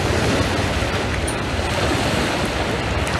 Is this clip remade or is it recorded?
recorded